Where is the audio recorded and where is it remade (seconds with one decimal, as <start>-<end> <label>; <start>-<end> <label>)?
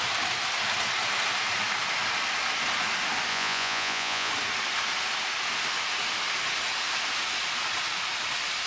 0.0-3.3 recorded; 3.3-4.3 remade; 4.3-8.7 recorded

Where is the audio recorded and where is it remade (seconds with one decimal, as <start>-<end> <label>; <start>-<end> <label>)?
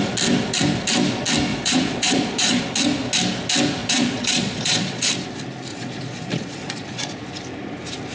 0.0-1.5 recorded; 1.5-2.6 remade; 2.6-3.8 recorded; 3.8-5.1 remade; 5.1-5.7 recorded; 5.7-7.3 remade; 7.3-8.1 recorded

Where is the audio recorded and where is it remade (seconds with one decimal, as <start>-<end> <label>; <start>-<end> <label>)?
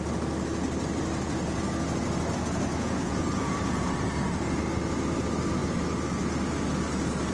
0.0-2.7 recorded; 2.7-3.9 remade; 3.9-7.3 recorded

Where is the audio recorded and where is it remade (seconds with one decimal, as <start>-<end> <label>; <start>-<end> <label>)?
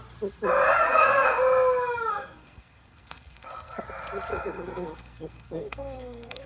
0.0-0.8 recorded; 0.8-1.4 remade; 1.4-2.1 recorded; 2.1-3.8 remade; 3.8-4.3 recorded; 4.3-6.5 remade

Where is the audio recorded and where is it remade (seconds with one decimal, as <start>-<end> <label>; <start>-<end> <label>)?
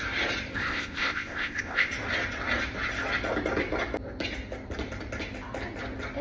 0.0-0.5 recorded; 0.5-1.9 remade; 1.9-6.2 recorded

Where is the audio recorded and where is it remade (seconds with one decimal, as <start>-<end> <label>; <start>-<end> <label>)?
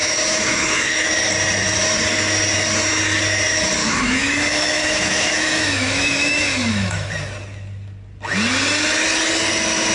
0.0-1.1 remade; 1.1-3.8 recorded; 3.8-7.1 remade; 7.1-9.9 recorded